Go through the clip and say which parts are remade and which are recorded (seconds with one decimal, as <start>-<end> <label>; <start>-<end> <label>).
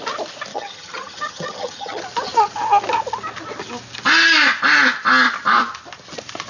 0.0-0.5 recorded; 0.5-2.0 remade; 2.0-6.5 recorded